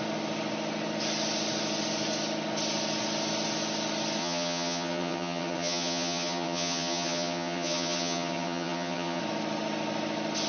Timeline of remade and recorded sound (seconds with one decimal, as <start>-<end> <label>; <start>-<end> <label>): 0.0-4.2 recorded; 4.2-9.2 remade; 9.2-10.5 recorded